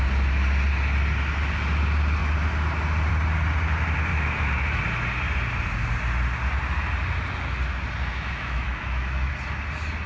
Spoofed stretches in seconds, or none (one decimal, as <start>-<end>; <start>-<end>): 4.1-4.8; 8.1-9.3